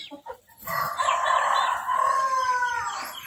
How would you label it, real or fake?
real